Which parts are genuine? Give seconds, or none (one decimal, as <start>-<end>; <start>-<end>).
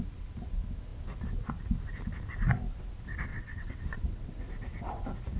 0.0-3.3; 4.3-5.4